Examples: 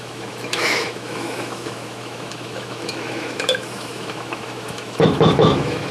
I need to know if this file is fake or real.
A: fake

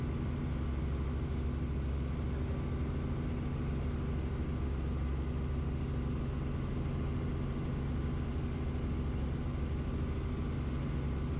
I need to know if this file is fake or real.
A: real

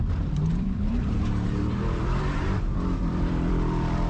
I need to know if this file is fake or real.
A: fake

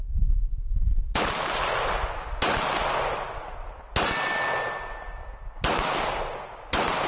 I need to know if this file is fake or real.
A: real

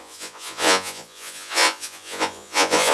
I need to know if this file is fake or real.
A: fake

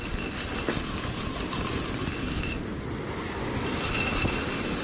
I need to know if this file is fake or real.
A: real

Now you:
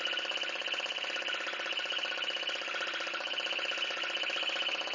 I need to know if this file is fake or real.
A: real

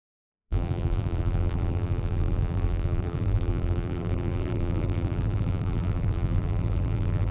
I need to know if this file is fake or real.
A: fake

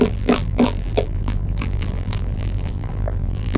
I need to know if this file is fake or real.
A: fake